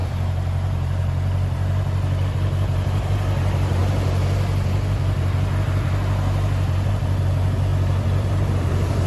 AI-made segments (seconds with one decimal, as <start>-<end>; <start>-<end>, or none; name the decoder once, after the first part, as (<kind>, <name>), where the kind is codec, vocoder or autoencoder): 0.0-3.8 (vocoder, BigVGAN v2); 6.9-9.1